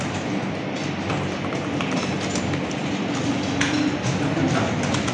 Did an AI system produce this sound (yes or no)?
no